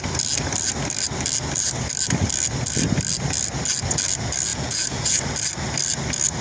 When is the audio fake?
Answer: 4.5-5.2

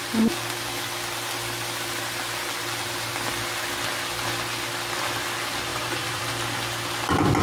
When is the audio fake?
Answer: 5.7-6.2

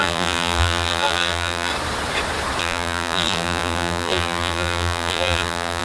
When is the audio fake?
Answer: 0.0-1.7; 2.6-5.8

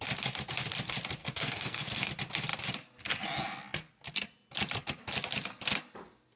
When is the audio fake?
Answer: 1.2-2.1

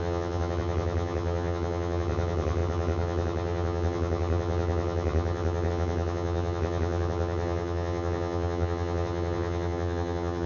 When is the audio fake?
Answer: 0.0-10.5